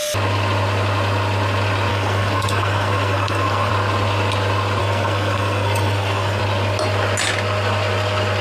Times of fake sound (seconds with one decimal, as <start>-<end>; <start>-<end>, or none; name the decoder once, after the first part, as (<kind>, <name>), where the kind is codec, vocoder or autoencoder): 1.9-3.7 (codec, SNAC); 4.8-6.4